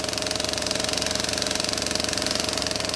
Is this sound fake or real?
fake